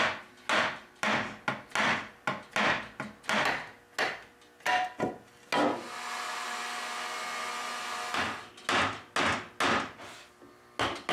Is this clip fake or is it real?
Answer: real